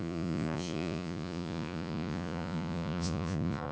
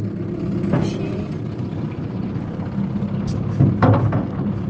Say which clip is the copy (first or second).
first